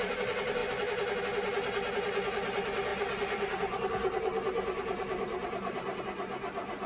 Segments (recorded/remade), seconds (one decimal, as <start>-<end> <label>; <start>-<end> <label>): 0.0-2.9 recorded; 2.9-6.0 remade; 6.0-6.9 recorded